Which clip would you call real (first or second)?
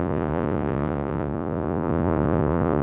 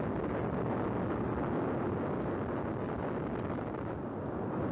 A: second